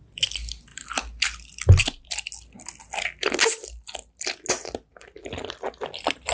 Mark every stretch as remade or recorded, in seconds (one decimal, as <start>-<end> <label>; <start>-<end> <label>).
0.0-6.3 recorded

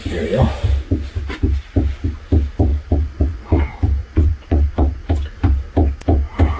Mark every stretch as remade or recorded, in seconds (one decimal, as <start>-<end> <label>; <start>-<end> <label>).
0.0-2.7 recorded; 2.7-3.6 remade; 3.6-4.0 recorded; 4.0-5.0 remade; 5.0-6.6 recorded

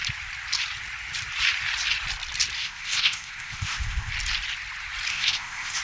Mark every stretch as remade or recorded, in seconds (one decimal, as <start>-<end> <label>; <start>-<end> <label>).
0.0-2.6 recorded; 2.6-4.1 remade; 4.1-5.1 recorded; 5.1-5.8 remade

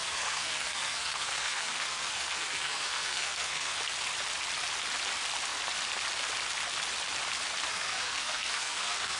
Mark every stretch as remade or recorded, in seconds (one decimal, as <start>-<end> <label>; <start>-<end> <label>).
0.0-3.8 remade; 3.8-7.7 recorded; 7.7-9.2 remade

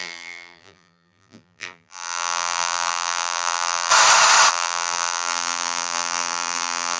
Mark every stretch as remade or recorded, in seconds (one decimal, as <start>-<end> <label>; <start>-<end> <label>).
0.0-3.9 remade; 3.9-4.5 recorded; 4.5-7.0 remade

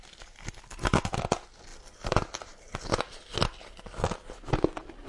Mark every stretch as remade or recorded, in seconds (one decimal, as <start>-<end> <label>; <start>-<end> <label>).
0.0-5.1 recorded

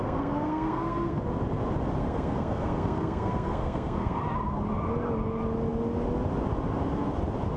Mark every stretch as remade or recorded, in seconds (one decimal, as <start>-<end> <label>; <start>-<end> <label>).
0.0-1.2 remade; 1.2-2.0 recorded; 2.0-4.2 remade; 4.2-7.6 recorded

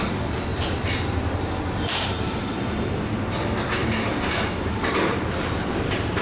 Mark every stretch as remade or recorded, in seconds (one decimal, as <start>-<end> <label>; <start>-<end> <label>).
0.0-0.5 recorded; 0.5-2.8 remade; 2.8-3.8 recorded; 3.8-6.2 remade